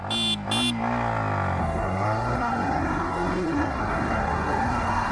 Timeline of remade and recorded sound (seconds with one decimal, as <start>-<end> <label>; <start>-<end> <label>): 0.0-1.6 recorded; 1.6-5.1 remade